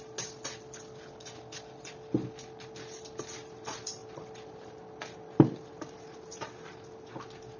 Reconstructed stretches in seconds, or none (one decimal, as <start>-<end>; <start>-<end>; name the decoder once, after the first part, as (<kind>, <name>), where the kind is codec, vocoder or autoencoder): none